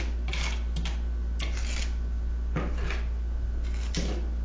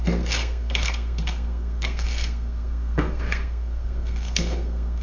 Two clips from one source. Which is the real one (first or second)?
first